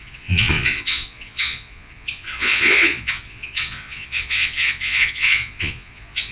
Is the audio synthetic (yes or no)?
yes